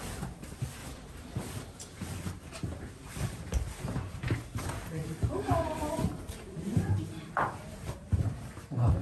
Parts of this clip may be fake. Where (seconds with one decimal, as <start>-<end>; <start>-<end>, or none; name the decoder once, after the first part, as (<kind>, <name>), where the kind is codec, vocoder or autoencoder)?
0.0-0.8 (vocoder, BigVGAN v2); 1.4-9.0